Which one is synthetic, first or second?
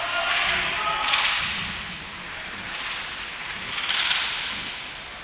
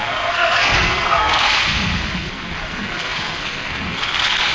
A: second